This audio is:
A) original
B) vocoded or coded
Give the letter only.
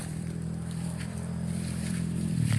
B